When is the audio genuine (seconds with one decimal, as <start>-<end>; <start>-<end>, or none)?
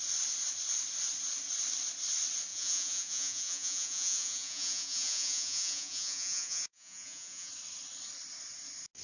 0.0-2.5; 7.5-9.0